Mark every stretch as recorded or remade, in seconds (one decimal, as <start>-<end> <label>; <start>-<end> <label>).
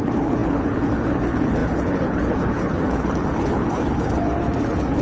0.0-5.0 remade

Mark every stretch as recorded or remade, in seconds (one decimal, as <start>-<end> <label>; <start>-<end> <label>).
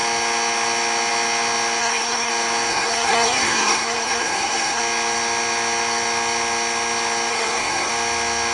0.0-1.8 recorded; 1.8-2.3 remade; 2.3-2.7 recorded; 2.7-4.8 remade; 4.8-7.3 recorded; 7.3-7.9 remade; 7.9-8.5 recorded